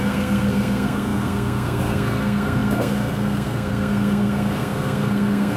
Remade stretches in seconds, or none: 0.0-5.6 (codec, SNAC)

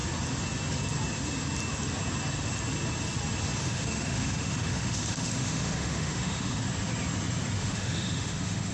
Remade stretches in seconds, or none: 3.6-6.6 (autoencoder, DAC-VAE); 7.6-8.7

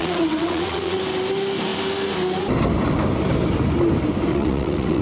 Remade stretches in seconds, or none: 0.0-1.0 (vocoder, WaveNeXt); 4.3-5.0